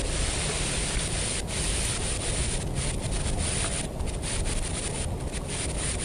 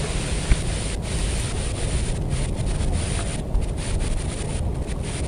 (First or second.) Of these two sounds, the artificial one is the first